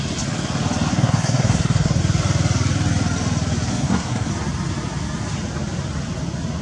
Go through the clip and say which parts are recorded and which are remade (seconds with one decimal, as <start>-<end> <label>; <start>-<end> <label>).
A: 0.0-0.9 recorded; 0.9-2.0 remade; 2.0-3.7 recorded; 3.7-4.3 remade; 4.3-6.6 recorded